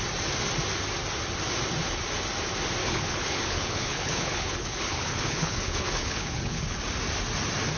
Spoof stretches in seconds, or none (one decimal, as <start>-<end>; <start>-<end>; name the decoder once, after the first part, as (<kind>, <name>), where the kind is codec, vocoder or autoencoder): 2.8-6.8 (codec, HILCodec)